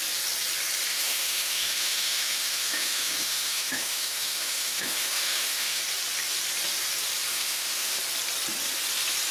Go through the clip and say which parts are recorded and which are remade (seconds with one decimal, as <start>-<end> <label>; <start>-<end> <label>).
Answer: 0.0-0.9 recorded; 0.9-5.8 remade; 5.8-7.3 recorded; 7.3-8.0 remade; 8.0-9.3 recorded

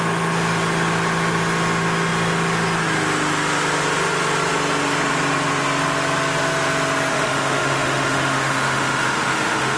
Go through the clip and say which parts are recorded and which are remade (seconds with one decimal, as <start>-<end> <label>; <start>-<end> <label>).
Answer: 0.0-7.1 recorded; 7.1-9.8 remade